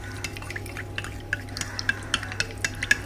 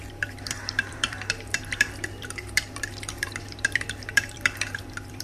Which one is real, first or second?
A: first